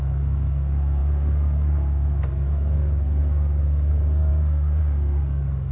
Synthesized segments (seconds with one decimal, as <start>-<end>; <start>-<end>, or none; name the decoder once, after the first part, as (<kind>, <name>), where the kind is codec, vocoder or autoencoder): 0.0-5.7 (codec, SNAC)